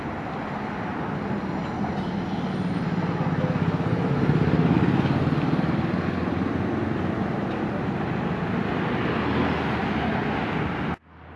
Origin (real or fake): real